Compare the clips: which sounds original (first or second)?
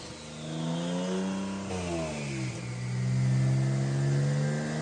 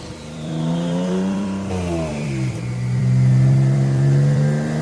first